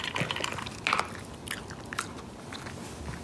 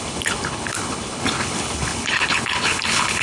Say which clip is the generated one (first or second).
second